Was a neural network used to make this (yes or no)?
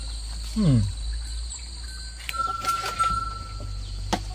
no